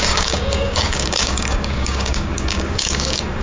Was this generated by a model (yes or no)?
yes